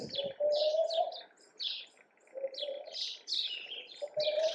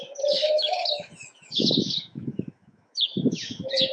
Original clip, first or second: first